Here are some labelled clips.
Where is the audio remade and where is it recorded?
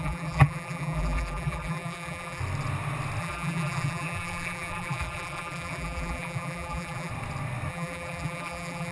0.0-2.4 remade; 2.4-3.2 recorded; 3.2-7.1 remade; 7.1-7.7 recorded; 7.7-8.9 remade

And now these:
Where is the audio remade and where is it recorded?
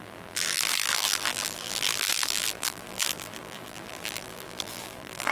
0.0-5.3 remade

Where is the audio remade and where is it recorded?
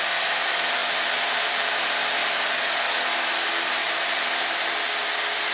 0.0-0.8 recorded; 0.8-1.7 remade; 1.7-2.2 recorded; 2.2-2.8 remade; 2.8-3.8 recorded; 3.8-4.6 remade; 4.6-5.5 recorded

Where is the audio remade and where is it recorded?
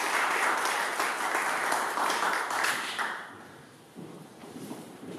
0.0-1.6 recorded; 1.6-3.6 remade; 3.6-4.4 recorded; 4.4-5.2 remade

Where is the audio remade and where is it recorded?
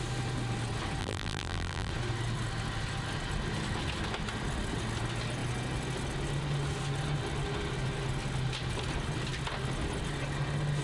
0.0-1.0 recorded; 1.0-1.9 remade; 1.9-10.8 recorded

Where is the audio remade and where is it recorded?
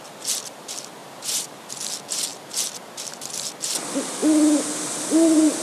0.0-1.0 recorded; 1.0-1.7 remade; 1.7-5.6 recorded